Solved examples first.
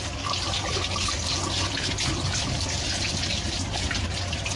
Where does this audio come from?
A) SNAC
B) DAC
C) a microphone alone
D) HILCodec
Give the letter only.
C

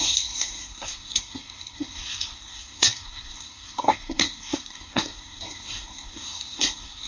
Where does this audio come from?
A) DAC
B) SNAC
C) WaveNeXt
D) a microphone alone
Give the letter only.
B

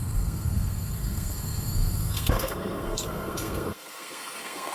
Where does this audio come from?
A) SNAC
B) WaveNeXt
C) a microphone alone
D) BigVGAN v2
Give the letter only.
A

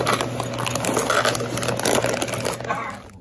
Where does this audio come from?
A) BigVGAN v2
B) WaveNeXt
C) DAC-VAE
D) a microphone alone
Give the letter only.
D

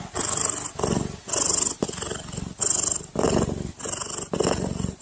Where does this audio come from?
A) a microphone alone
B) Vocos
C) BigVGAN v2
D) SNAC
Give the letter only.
A